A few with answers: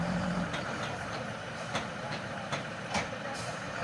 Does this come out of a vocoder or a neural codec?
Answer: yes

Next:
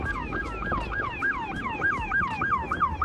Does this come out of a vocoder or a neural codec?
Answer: yes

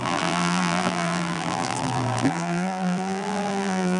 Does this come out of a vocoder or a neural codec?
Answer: yes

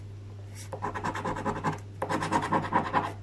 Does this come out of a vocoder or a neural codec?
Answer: yes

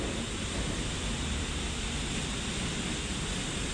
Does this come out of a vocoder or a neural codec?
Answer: no